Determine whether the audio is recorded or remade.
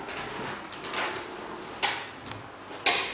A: recorded